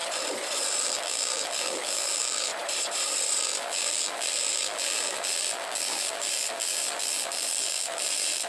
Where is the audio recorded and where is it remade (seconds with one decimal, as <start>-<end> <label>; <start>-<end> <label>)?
0.0-0.8 recorded; 0.8-2.5 remade; 2.5-3.4 recorded; 3.4-8.5 remade